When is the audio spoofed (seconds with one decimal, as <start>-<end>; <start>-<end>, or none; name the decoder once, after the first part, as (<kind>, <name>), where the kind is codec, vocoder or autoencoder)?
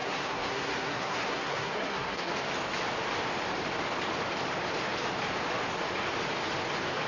0.0-2.3 (codec, SNAC)